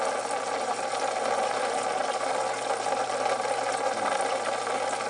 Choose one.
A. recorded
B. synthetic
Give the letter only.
A